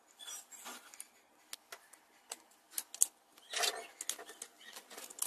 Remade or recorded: recorded